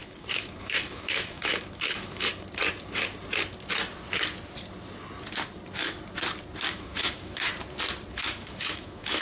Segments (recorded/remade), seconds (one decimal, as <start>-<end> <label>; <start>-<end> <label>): 0.0-2.3 remade; 2.3-6.7 recorded; 6.7-7.5 remade; 7.5-8.1 recorded; 8.1-9.2 remade